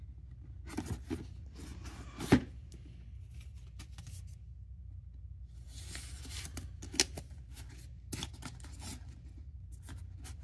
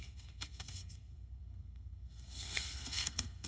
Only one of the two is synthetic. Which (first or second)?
second